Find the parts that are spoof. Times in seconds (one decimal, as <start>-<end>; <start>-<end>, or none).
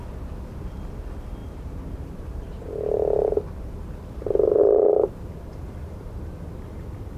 1.4-3.9; 4.6-6.3